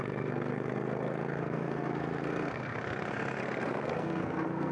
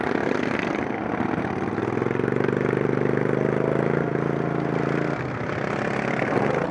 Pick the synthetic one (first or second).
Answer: first